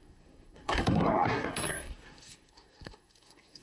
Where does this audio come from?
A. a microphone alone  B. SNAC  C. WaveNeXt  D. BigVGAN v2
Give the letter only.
B